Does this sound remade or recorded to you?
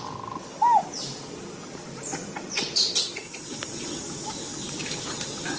recorded